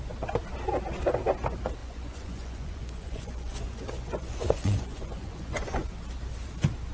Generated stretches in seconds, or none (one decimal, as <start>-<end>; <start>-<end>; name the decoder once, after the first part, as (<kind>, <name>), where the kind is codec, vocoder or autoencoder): 1.8-5.9 (vocoder, Vocos)